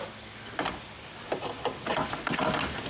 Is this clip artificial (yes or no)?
no